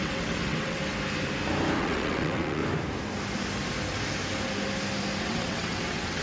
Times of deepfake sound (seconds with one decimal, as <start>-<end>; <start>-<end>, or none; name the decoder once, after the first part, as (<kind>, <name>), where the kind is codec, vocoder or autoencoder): 0.0-0.8 (vocoder, WaveNeXt); 1.8-2.6; 5.2-6.2